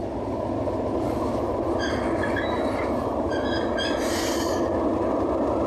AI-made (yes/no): no